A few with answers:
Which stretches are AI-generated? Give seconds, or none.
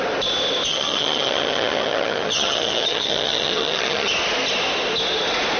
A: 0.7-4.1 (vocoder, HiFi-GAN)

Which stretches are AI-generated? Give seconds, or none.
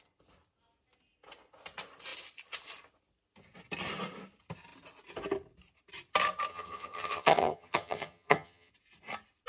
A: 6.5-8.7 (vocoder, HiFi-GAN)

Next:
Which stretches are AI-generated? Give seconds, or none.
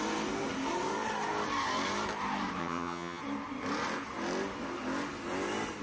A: 2.6-3.2 (vocoder, HiFi-GAN)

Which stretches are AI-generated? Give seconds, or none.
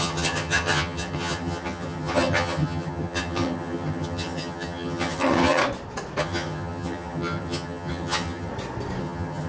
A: 0.0-5.6 (vocoder, HiFi-GAN); 6.2-8.5; 9.0-9.5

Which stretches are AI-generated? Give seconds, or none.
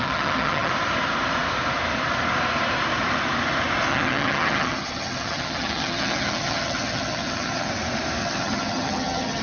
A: 0.0-0.7 (vocoder, HiFi-GAN); 3.9-7.7; 8.2-9.4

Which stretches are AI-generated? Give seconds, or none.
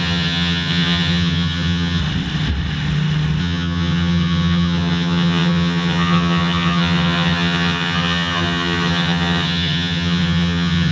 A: 0.0-2.0 (vocoder, HiFi-GAN); 3.4-10.9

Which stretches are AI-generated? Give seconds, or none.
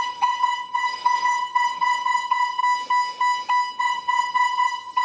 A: 0.0-2.6 (vocoder, HiFi-GAN); 3.8-5.0